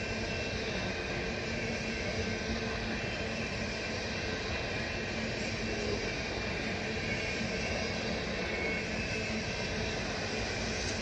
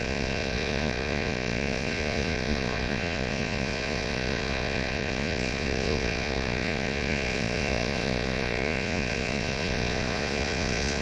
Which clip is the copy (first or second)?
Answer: second